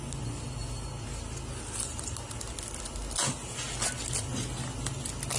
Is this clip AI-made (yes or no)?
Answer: no